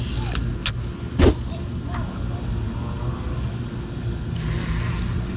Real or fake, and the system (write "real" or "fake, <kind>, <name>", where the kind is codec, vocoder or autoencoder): real